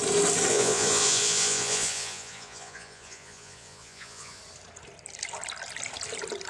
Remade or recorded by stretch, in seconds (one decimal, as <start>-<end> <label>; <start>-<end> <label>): 0.0-0.5 recorded; 0.5-4.4 remade; 4.4-6.5 recorded